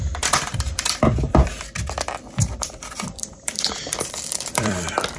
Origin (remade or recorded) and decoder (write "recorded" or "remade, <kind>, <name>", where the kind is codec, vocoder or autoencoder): remade, vocoder, BigVGAN v2